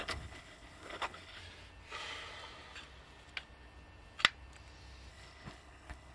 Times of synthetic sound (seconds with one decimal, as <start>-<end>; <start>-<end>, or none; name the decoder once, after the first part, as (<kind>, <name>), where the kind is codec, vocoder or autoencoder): 0.0-1.4 (codec, HILCodec); 5.1-6.1